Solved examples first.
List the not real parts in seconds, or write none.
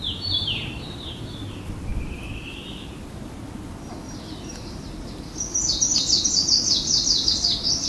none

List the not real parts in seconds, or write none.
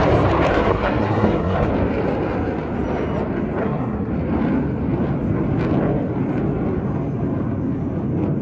0.5-1.7 (codec, SNAC); 3.6-4.1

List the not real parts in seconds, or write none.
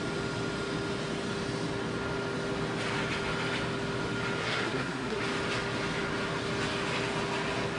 4.4-5.2 (codec, SNAC)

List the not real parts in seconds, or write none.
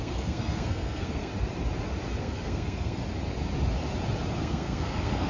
0.0-1.3 (codec, SNAC); 2.2-3.0; 4.4-5.3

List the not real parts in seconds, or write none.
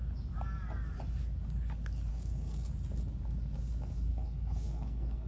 2.1-2.7 (codec, SNAC); 4.1-5.3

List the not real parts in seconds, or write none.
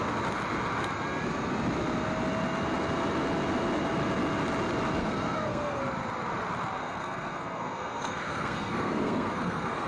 5.0-5.8 (codec, SNAC); 6.8-9.9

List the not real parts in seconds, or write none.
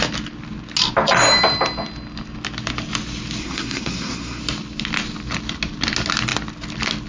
3.4-4.4 (codec, SNAC)